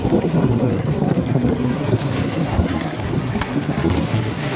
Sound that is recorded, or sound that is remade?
remade